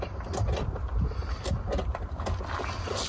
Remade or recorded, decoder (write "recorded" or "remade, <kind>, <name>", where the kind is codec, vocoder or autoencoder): recorded